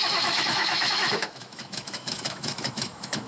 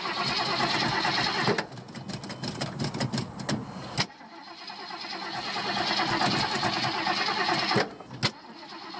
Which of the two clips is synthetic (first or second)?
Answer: first